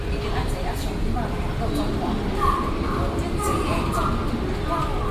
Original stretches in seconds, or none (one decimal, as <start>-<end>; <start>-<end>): 0.0-5.1